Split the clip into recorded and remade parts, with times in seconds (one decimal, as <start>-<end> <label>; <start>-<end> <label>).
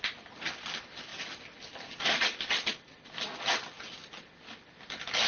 0.0-5.3 recorded